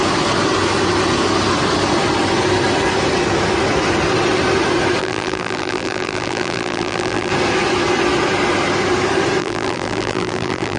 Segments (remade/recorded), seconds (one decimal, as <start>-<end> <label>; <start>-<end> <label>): 0.0-5.0 recorded; 5.0-7.3 remade; 7.3-9.4 recorded; 9.4-10.8 remade